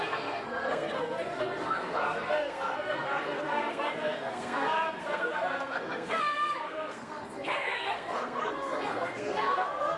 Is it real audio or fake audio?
fake